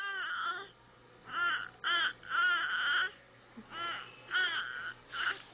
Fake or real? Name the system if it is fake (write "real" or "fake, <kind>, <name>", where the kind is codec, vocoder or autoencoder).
real